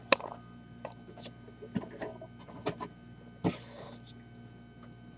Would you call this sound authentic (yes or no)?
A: yes